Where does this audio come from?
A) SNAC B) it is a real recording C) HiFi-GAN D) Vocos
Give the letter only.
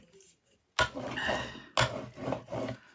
B